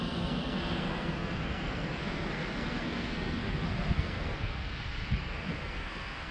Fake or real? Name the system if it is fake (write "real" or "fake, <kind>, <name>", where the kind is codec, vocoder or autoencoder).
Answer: fake, codec, SNAC